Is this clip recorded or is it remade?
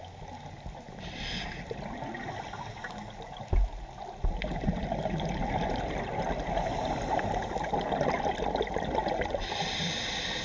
recorded